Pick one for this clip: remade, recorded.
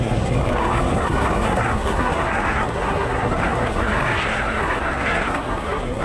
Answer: remade